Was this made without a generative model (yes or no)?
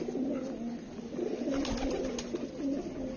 yes